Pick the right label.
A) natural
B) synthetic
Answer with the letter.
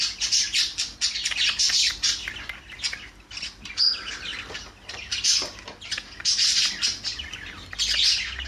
A